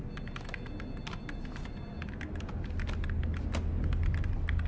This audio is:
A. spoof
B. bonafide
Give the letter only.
B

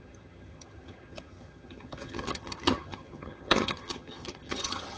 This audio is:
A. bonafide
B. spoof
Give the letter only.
B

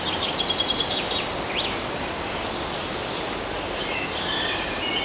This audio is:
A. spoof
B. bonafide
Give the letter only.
B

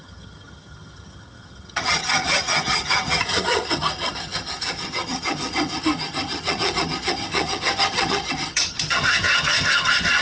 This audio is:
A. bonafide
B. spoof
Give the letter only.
B